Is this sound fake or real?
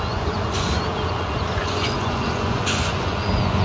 fake